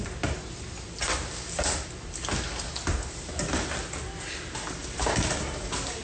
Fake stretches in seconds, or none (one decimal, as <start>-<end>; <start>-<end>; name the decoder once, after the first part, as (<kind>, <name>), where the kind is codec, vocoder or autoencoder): 2.9-3.6 (vocoder, BigVGAN v2); 4.8-6.0